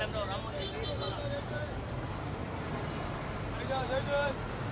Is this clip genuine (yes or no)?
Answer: yes